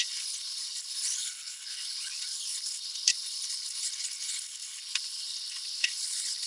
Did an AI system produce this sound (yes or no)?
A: yes